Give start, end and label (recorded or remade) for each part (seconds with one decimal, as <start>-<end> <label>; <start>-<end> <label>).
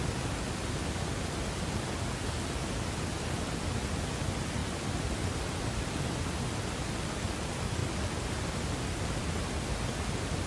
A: 0.0-10.5 recorded